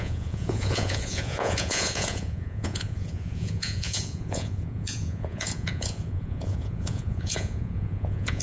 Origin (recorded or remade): remade